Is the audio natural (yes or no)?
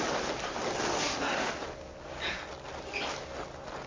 yes